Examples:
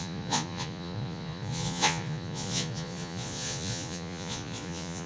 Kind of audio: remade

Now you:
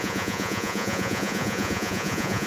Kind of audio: remade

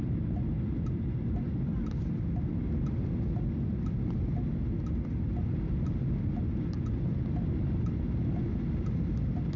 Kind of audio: recorded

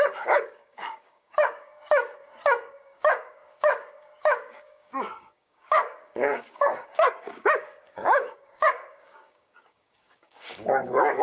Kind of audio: remade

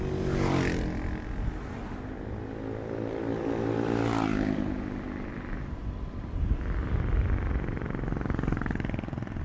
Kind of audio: recorded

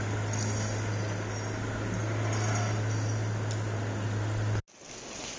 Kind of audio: recorded